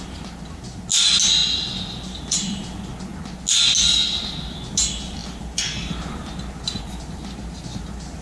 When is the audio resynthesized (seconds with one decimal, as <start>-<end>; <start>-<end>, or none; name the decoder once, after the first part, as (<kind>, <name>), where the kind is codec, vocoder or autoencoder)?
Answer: 1.4-2.6 (vocoder, BigVGAN v2); 5.2-6.3